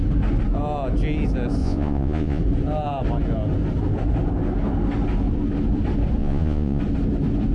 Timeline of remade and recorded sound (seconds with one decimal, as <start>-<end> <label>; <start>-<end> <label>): 0.0-1.6 recorded; 1.6-2.4 remade; 2.4-6.2 recorded; 6.2-6.8 remade; 6.8-7.5 recorded